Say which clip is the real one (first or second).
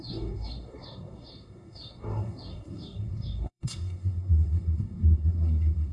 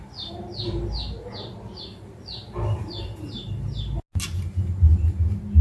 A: second